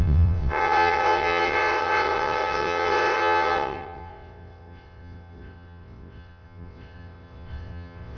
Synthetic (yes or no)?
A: yes